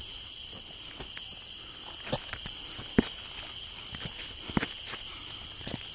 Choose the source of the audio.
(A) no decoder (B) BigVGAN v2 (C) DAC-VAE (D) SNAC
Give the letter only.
A